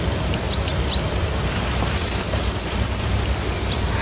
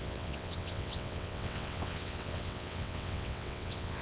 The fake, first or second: second